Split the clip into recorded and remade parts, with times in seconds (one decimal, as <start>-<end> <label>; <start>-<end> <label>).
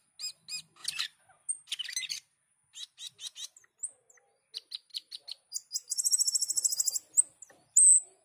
0.0-8.2 recorded